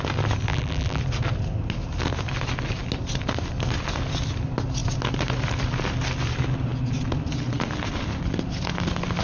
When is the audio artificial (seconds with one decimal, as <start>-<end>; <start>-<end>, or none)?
0.5-1.0